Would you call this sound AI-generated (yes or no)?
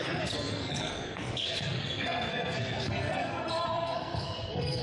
yes